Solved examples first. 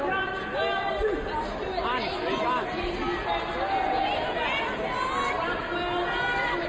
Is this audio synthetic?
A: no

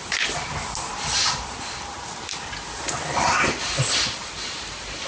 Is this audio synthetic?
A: no